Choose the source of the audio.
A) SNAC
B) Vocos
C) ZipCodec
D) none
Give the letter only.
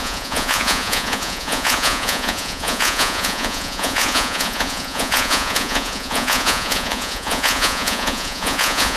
B